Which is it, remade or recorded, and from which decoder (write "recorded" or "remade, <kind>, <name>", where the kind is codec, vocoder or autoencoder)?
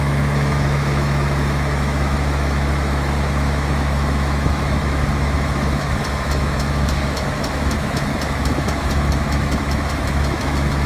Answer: remade, autoencoder, DAC-VAE